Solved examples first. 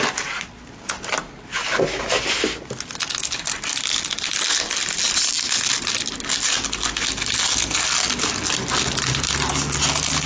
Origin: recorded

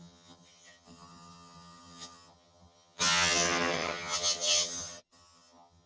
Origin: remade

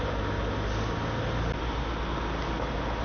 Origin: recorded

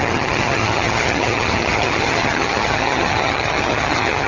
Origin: remade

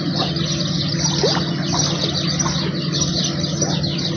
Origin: recorded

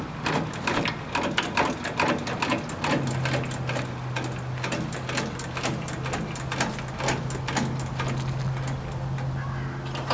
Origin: recorded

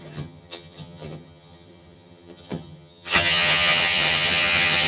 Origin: remade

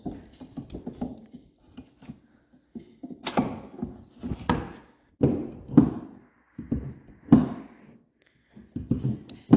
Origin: recorded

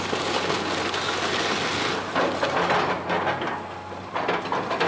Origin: recorded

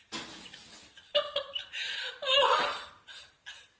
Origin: recorded